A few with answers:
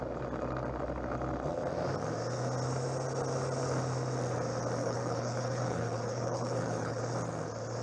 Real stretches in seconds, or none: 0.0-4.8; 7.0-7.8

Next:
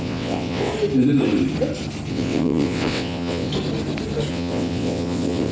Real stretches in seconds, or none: 0.7-2.1; 3.5-4.3

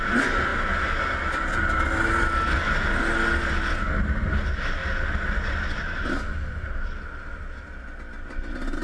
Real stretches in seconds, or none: 0.0-8.8

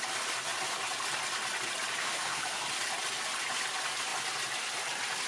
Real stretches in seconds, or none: 0.0-2.0; 2.6-5.3

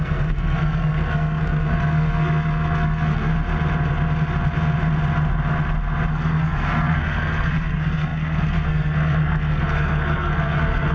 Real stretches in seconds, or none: 3.3-6.1

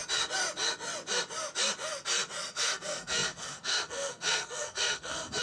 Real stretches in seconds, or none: 0.0-2.5

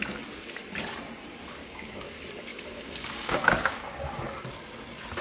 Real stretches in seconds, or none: 0.0-1.6; 2.1-2.5; 4.2-5.2